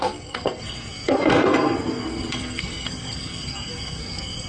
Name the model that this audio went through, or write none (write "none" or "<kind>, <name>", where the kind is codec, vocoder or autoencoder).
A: codec, SNAC